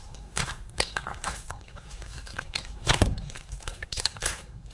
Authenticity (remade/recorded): remade